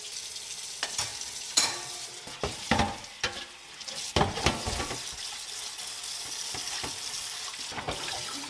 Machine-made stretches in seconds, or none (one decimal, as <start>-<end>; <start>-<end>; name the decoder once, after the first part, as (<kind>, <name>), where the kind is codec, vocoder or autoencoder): none